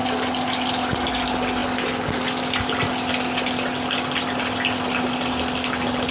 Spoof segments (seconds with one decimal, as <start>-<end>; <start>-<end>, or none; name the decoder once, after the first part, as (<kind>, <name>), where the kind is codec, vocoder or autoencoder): none